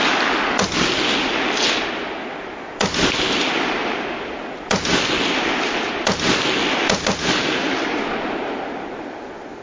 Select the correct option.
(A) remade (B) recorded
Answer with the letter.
B